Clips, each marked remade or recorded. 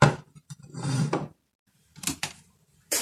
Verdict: remade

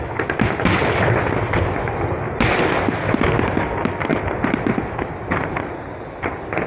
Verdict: recorded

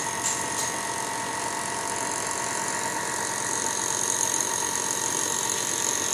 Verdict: recorded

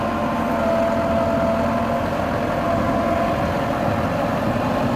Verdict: recorded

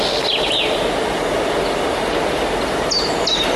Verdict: recorded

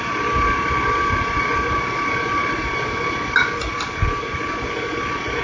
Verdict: recorded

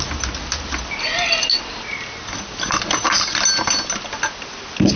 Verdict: recorded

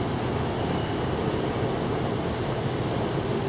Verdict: recorded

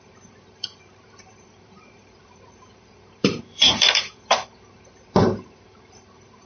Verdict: remade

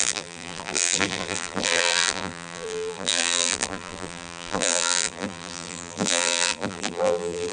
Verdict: remade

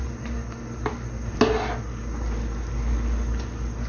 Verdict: recorded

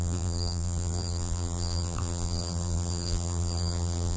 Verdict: remade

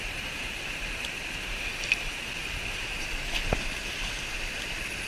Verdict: recorded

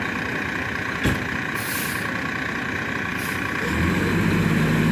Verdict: recorded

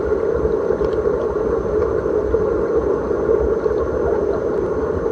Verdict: recorded